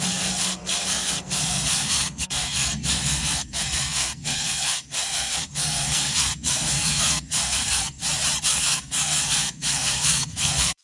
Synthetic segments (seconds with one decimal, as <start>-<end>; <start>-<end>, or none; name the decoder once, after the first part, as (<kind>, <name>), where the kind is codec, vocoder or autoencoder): 0.0-8.0 (codec, SNAC); 8.5-10.8